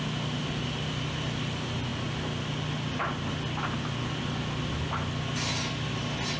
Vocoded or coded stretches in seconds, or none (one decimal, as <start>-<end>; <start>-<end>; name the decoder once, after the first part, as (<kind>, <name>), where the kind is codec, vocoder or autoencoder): none